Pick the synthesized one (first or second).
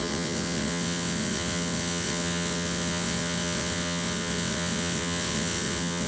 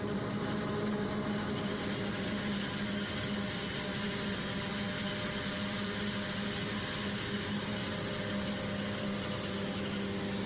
first